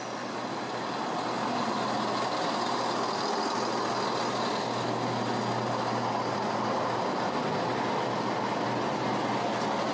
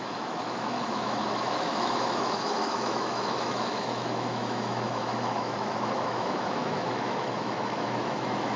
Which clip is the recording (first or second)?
first